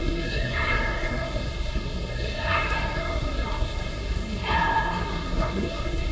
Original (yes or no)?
no